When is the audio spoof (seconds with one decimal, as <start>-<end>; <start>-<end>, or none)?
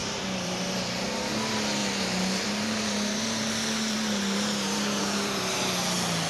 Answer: 0.0-0.7; 1.8-5.6